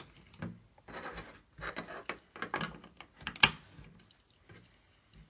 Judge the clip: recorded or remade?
recorded